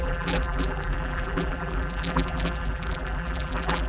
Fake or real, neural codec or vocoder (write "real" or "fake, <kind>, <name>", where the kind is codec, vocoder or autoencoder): fake, vocoder, BigVGAN v2